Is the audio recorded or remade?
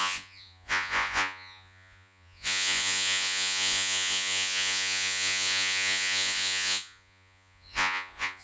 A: remade